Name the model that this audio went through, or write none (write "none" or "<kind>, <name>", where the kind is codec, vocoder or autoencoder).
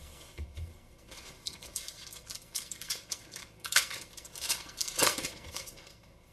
codec, SNAC